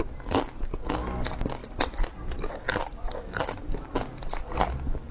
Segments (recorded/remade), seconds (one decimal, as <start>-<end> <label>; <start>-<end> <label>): 0.0-5.1 recorded